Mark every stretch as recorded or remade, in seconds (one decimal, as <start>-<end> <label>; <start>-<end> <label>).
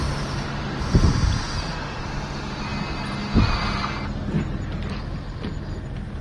0.0-2.0 remade; 2.0-6.2 recorded